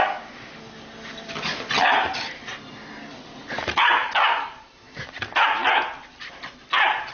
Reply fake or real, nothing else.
real